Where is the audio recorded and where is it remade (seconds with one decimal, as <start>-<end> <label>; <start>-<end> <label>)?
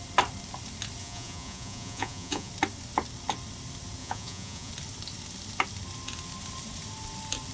0.0-1.0 recorded; 1.0-2.5 remade; 2.5-4.0 recorded; 4.0-4.7 remade; 4.7-7.5 recorded